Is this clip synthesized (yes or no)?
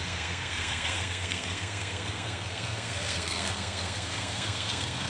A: yes